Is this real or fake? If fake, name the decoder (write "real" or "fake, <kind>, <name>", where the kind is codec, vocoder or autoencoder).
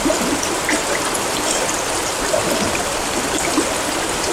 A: real